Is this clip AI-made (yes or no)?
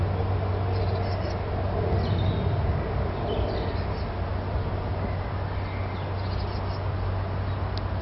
no